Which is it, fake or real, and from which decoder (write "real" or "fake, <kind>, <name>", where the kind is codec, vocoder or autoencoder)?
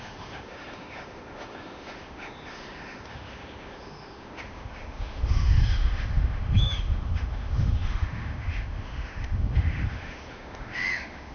fake, autoencoder, DAC-VAE